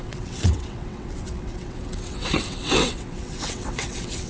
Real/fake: fake